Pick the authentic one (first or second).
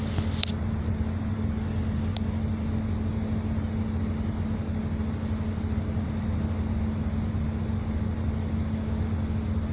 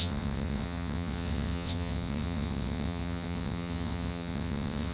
first